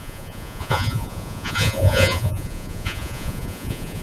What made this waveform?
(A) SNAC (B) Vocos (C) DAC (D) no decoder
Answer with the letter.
B